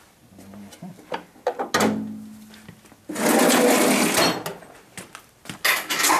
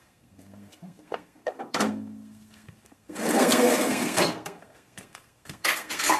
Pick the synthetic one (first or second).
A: second